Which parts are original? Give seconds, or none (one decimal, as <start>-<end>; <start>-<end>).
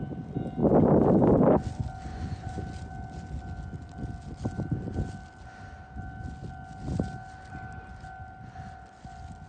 0.0-2.1; 2.6-9.5